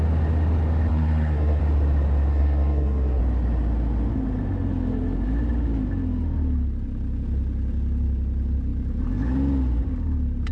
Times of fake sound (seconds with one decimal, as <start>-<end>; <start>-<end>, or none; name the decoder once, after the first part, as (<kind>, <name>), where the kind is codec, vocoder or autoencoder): 0.9-1.6 (codec, SNAC); 2.3-3.2